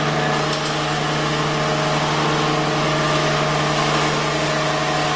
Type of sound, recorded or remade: recorded